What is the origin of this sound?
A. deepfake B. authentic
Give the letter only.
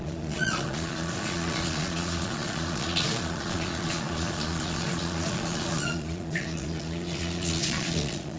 A